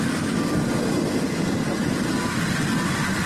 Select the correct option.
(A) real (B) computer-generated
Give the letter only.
A